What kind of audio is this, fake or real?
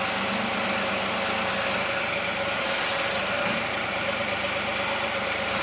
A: real